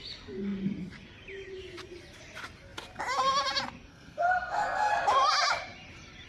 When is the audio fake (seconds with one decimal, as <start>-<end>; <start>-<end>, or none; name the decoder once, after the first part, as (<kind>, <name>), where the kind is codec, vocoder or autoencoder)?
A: 3.9-4.9 (codec, SNAC)